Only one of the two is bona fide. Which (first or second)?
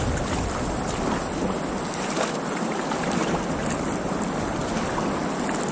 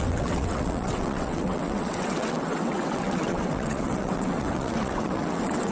first